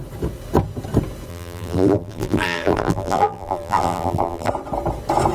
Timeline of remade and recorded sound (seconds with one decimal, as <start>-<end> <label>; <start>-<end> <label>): 0.0-1.3 recorded; 1.3-4.5 remade; 4.5-5.3 recorded